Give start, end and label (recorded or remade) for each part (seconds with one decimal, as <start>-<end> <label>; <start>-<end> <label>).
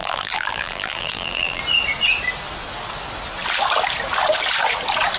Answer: 0.0-1.6 remade; 1.6-5.2 recorded